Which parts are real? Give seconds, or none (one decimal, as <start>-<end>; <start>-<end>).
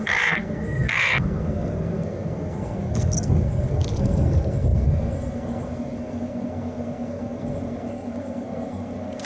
none